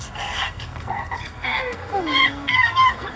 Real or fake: fake